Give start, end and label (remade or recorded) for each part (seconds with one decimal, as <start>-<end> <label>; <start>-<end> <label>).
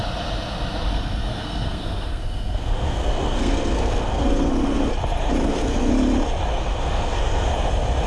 0.0-0.9 recorded; 0.9-4.9 remade; 4.9-5.4 recorded; 5.4-5.9 remade; 5.9-6.5 recorded; 6.5-7.5 remade; 7.5-8.1 recorded